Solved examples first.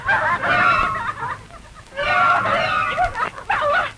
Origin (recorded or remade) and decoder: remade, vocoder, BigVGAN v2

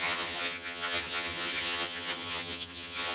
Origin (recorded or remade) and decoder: remade, vocoder, HiFi-GAN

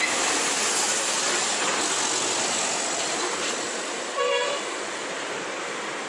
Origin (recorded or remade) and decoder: recorded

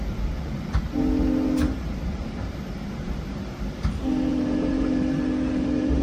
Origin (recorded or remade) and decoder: remade, vocoder, BigVGAN v2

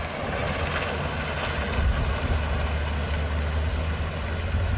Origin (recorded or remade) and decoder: recorded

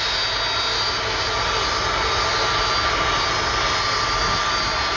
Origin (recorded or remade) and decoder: recorded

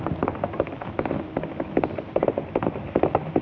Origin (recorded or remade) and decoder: remade, vocoder, BigVGAN v2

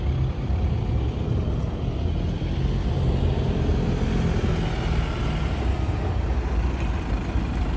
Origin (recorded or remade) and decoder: recorded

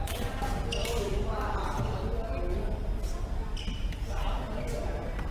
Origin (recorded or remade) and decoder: recorded